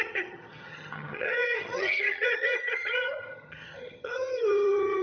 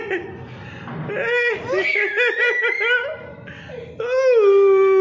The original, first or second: second